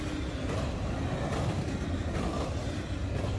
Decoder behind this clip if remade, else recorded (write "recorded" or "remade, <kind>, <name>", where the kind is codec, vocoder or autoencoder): recorded